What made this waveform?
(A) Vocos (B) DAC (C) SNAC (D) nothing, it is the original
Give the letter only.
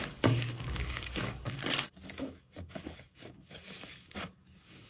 B